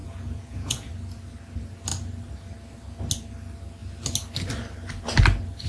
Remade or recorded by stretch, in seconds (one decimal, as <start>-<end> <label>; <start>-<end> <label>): 0.0-0.9 remade; 0.9-5.7 recorded